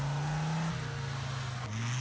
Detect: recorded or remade recorded